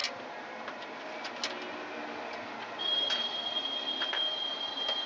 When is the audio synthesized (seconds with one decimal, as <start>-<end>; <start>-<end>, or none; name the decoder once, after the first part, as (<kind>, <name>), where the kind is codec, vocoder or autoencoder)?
3.1-5.1 (vocoder, BigVGAN v2)